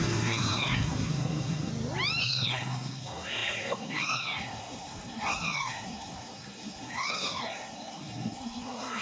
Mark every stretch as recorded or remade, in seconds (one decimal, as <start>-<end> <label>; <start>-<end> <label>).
0.0-1.7 remade; 1.7-2.2 recorded; 2.2-9.0 remade